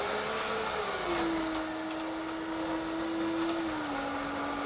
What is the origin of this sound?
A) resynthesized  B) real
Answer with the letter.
B